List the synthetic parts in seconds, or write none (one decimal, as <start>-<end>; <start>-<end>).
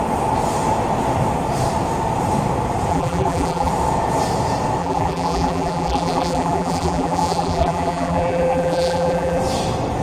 2.9-3.7; 4.8-9.4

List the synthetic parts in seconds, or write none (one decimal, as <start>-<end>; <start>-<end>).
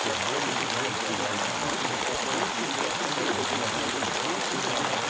1.6-4.4